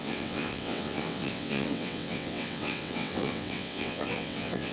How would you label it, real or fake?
fake